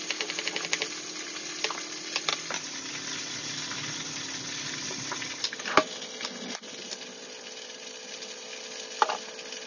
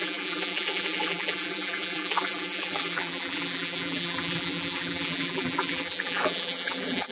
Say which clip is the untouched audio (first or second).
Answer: first